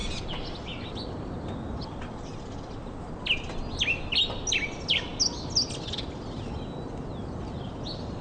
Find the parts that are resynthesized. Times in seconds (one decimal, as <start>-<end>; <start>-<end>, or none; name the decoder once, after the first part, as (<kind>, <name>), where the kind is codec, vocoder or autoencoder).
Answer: none